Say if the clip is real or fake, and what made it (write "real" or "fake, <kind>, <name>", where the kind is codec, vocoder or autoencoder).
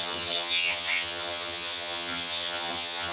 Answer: fake, vocoder, HiFi-GAN